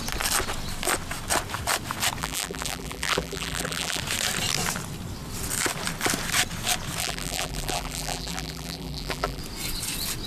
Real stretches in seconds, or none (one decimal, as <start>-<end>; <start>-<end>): 0.0-2.2; 4.0-7.0; 9.4-10.3